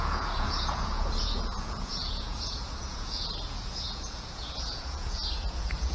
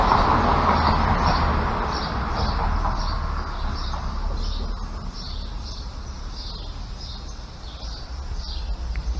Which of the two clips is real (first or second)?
second